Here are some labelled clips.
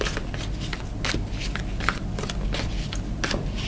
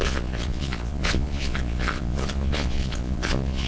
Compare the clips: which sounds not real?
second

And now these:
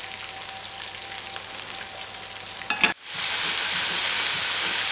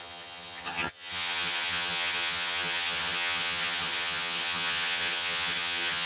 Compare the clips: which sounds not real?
second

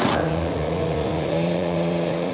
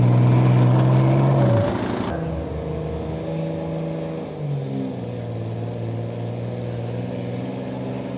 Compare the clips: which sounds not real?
first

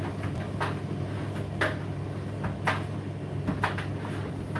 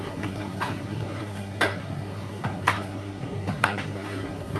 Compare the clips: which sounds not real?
second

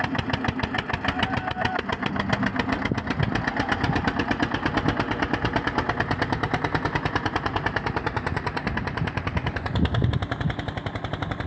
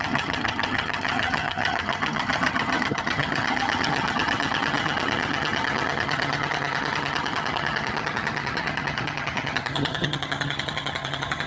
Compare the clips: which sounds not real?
second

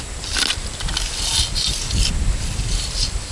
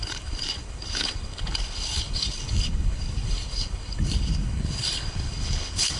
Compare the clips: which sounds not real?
second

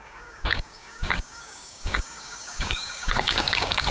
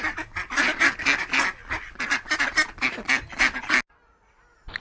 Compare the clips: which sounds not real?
first